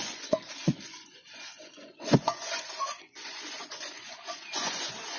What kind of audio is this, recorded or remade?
remade